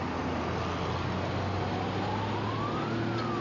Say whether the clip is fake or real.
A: real